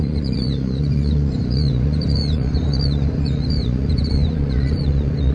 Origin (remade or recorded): remade